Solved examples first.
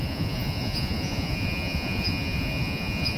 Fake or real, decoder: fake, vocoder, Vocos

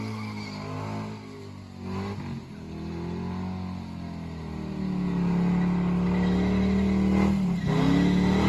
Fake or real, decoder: real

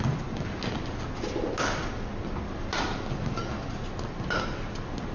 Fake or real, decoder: real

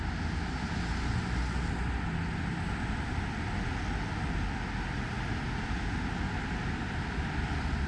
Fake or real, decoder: real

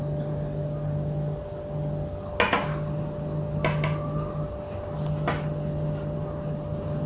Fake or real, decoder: real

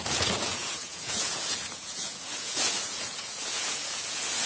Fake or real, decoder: fake, vocoder, Vocos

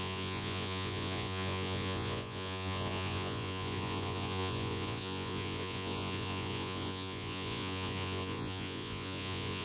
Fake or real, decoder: fake, vocoder, Vocos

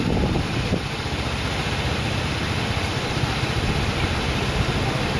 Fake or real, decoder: real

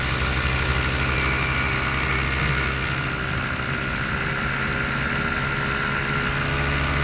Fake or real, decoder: real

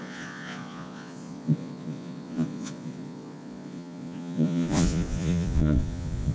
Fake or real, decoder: fake, vocoder, Vocos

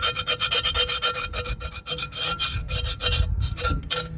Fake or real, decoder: real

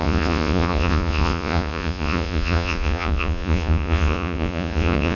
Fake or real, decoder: fake, vocoder, Vocos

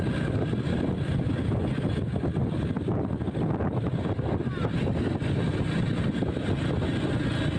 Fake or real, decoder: real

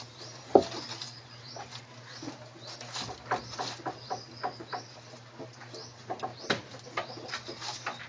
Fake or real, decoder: real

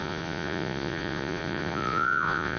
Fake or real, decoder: fake, vocoder, Vocos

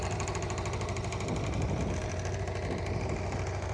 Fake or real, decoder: real